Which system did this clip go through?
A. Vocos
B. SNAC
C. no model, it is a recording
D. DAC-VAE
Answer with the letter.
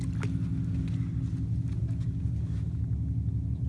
C